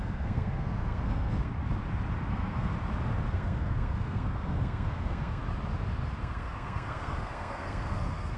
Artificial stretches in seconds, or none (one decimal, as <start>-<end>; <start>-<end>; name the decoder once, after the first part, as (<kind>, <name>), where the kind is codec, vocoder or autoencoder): 0.0-1.5 (codec, SNAC); 2.3-2.7; 3.3-5.4; 6.2-8.4